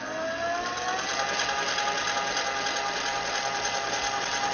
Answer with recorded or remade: recorded